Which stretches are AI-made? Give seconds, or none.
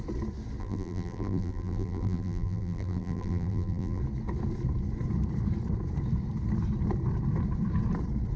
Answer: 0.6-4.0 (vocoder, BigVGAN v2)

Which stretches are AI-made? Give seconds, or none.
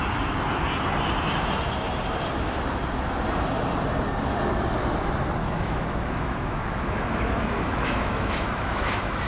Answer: 5.4-9.3 (autoencoder, DAC-VAE)